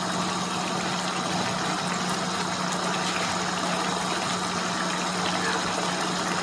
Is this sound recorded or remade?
recorded